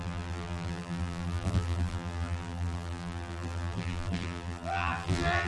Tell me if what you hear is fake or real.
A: fake